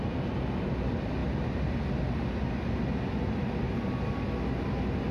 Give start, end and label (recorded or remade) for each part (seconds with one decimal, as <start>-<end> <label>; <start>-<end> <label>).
0.0-5.1 recorded